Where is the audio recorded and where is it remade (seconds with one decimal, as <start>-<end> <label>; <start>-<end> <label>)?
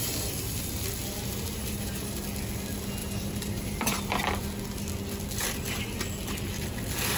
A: 0.0-1.6 recorded; 1.6-2.2 remade; 2.2-3.0 recorded; 3.0-4.0 remade; 4.0-7.2 recorded